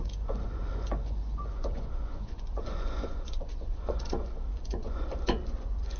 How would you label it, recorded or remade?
remade